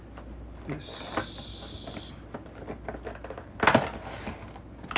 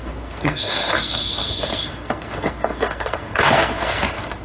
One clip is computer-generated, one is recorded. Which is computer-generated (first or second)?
second